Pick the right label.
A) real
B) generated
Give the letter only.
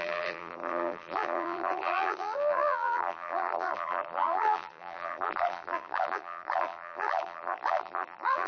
B